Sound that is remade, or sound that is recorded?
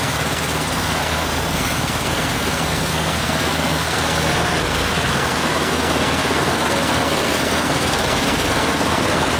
remade